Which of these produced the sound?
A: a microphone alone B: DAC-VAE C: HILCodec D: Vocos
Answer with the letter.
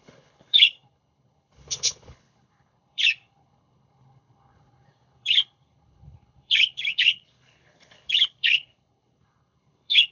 C